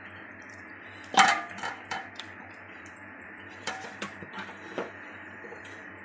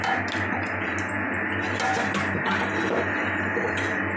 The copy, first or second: first